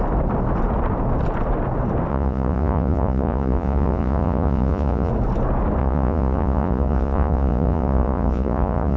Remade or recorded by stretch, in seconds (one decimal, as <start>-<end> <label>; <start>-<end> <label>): 0.0-2.1 recorded; 2.1-5.1 remade; 5.1-5.8 recorded; 5.8-9.0 remade